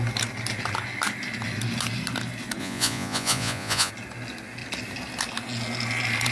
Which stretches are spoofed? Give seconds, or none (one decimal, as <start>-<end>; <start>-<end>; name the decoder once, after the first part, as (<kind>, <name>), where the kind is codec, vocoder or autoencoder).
2.6-3.9 (vocoder, Vocos)